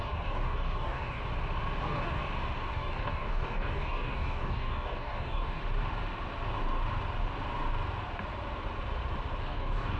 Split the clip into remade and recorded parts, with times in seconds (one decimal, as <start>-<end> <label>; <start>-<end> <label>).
0.0-1.2 remade; 1.2-1.8 recorded; 1.8-2.2 remade; 2.2-2.7 recorded; 2.7-5.6 remade; 5.6-9.4 recorded; 9.4-10.0 remade